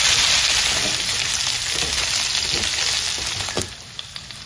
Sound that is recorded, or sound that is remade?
recorded